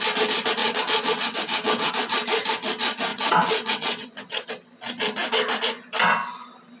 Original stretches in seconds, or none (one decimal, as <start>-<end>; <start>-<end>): 0.0-0.6; 1.9-3.1; 4.5-6.8